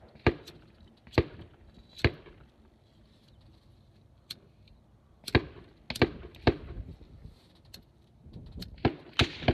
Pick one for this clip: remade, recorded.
recorded